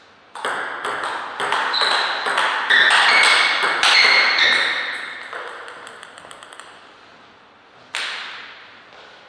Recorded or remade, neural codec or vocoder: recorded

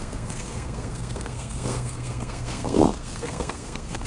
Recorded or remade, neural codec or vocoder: remade, codec, SNAC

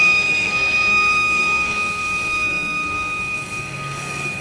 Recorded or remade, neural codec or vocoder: remade, codec, SNAC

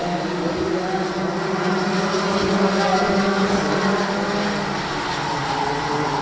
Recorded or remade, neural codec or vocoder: recorded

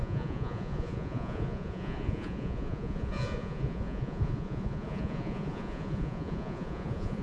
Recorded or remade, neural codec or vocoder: remade, vocoder, Vocos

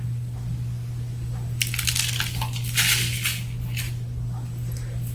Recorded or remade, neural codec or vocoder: recorded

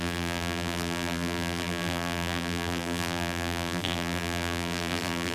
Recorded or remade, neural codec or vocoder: remade, vocoder, BigVGAN v2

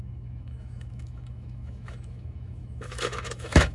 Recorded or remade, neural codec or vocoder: remade, autoencoder, DAC-VAE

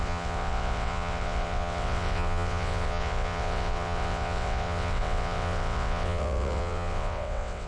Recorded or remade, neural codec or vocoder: remade, vocoder, WaveNeXt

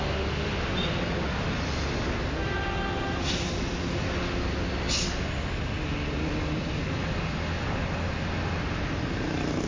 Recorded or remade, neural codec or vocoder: recorded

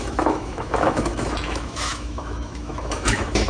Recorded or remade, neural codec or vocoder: remade, autoencoder, DAC-VAE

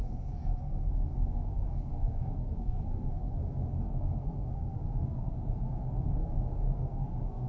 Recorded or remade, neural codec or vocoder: remade, codec, SNAC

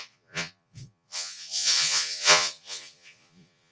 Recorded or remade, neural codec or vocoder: remade, vocoder, Vocos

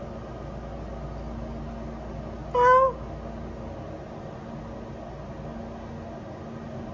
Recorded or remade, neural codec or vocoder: recorded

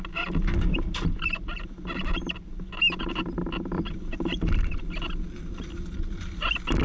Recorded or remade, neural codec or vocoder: recorded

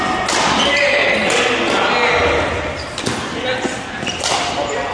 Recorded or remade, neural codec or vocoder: recorded